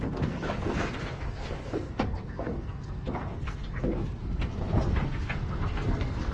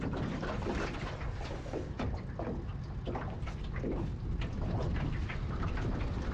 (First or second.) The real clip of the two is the second